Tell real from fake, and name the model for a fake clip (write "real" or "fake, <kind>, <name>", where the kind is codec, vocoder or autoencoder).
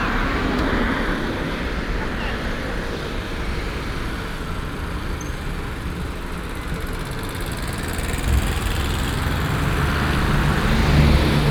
real